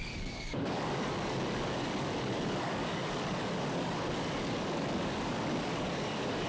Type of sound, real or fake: fake